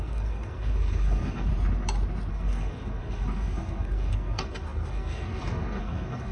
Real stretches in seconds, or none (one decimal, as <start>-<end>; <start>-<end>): 1.5-2.3